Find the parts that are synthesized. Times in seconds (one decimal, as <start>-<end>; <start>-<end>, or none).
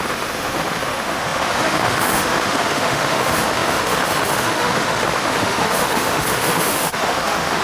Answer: 0.0-7.6